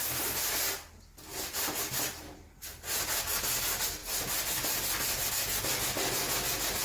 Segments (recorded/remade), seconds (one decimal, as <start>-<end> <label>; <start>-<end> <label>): 0.0-1.3 recorded; 1.3-3.2 remade; 3.2-6.8 recorded